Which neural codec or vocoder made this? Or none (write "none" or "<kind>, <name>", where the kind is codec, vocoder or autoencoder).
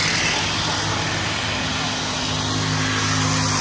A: none